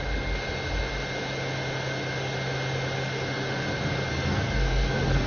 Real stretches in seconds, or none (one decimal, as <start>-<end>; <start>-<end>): 0.0-4.1